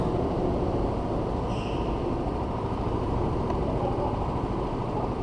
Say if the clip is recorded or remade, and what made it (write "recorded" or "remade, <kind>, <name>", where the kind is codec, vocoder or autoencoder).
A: recorded